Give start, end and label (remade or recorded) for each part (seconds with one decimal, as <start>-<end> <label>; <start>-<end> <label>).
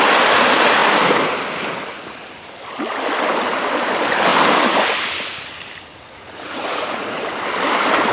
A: 0.0-5.9 recorded; 5.9-7.2 remade; 7.2-8.1 recorded